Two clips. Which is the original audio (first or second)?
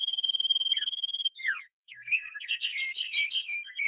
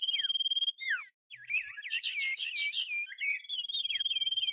second